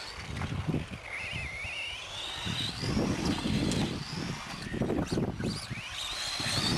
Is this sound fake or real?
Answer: real